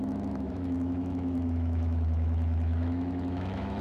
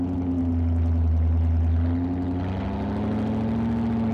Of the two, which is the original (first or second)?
second